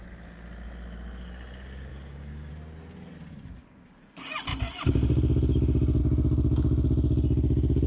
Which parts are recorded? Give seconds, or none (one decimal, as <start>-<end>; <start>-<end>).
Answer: 0.0-1.9; 2.5-7.9